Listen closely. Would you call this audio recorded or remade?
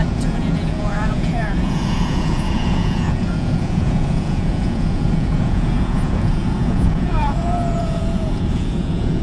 remade